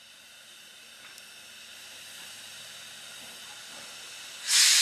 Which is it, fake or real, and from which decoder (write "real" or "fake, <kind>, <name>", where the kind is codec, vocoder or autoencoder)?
real